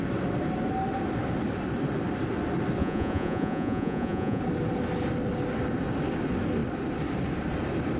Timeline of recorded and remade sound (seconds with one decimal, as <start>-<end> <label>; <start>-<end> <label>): 0.0-2.8 recorded; 2.8-4.4 remade; 4.4-8.0 recorded